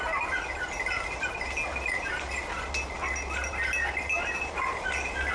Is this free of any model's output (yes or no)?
yes